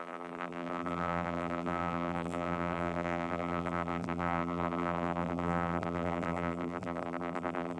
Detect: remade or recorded remade